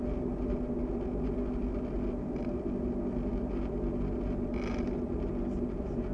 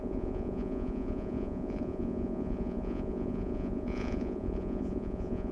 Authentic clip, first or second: first